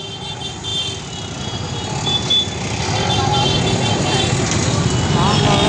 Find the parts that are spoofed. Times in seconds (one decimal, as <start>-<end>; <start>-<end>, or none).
none